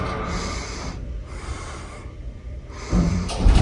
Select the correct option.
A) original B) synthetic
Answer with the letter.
B